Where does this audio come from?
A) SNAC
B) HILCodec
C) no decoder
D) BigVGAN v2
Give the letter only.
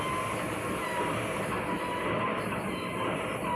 C